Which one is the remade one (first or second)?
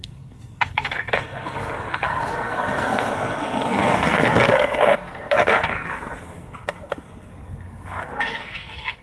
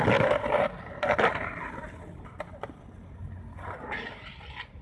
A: first